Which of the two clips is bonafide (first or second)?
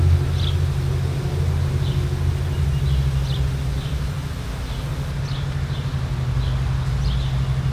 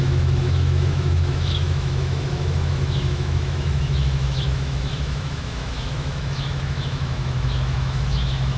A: first